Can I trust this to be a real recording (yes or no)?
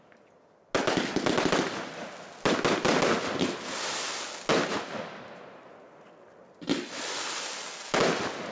yes